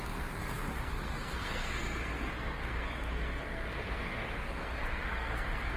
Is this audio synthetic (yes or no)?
yes